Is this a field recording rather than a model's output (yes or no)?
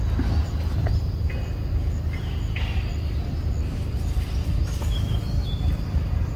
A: yes